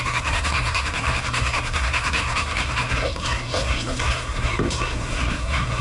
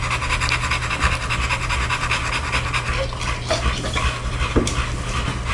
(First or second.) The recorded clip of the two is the second